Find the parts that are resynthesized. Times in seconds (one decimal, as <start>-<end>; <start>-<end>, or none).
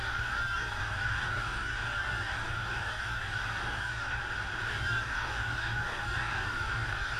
0.0-4.2; 4.7-7.2